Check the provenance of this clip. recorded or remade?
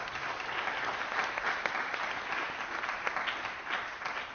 recorded